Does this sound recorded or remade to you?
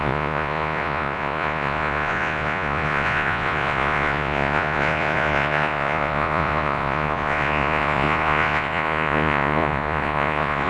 remade